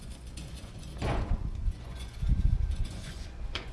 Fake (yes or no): yes